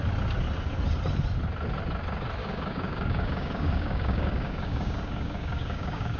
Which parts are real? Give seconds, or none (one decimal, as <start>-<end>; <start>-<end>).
0.0-2.4